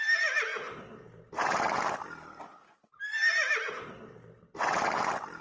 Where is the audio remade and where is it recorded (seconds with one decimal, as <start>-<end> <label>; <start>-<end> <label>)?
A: 0.0-5.4 recorded